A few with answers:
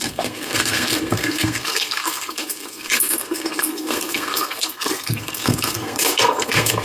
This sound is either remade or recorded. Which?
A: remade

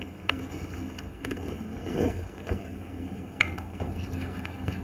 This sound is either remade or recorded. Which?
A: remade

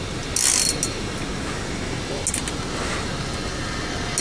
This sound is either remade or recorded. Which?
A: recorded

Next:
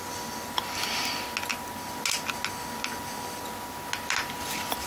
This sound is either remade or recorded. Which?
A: recorded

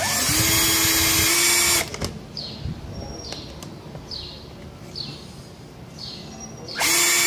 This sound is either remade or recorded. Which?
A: recorded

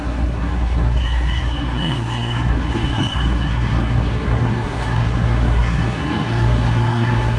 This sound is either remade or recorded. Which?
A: remade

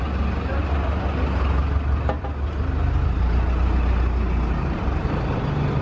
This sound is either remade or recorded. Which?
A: recorded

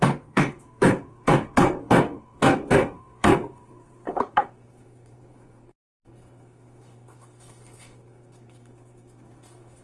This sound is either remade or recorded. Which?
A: remade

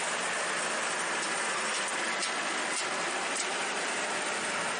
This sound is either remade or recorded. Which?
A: recorded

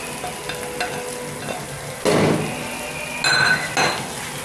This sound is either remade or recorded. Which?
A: recorded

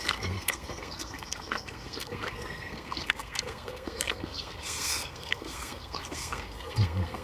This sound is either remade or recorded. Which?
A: remade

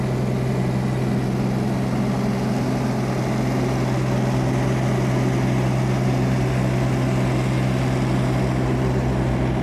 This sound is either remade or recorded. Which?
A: recorded